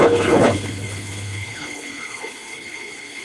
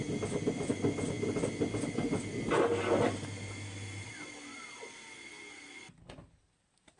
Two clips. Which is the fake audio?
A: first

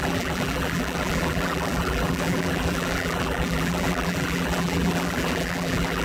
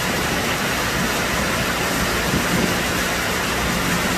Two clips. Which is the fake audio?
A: first